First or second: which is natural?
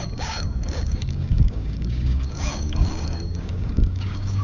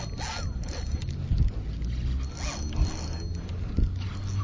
second